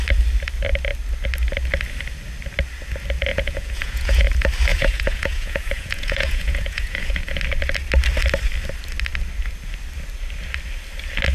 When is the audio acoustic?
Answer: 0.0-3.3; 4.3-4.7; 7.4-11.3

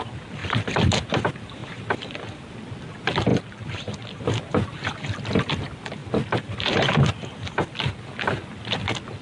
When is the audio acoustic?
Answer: 0.0-9.2

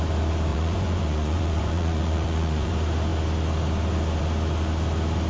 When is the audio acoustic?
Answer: 0.0-0.5; 2.7-5.3